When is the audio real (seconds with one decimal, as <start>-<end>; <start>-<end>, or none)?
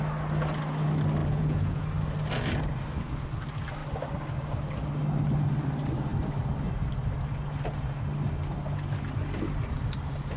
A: 0.0-1.2; 1.8-10.4